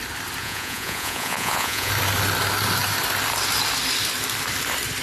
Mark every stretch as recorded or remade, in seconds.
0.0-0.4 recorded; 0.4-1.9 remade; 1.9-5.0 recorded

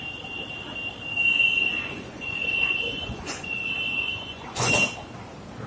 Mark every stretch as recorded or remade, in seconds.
0.0-1.3 recorded; 1.3-4.7 remade; 4.7-5.7 recorded

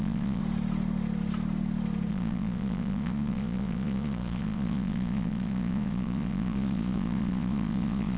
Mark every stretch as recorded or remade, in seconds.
0.0-0.4 remade; 0.4-2.1 recorded; 2.1-8.2 remade

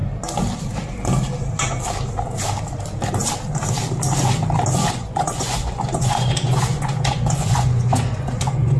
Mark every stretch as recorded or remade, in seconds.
0.0-4.9 recorded; 4.9-8.8 remade

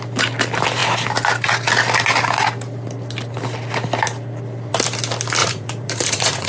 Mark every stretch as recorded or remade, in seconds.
0.0-5.4 recorded; 5.4-6.5 remade

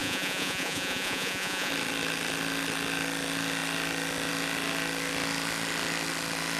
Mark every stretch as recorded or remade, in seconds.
0.0-1.7 remade; 1.7-6.6 recorded

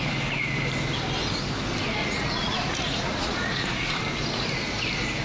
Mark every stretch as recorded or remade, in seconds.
0.0-2.0 recorded; 2.0-4.0 remade; 4.0-5.2 recorded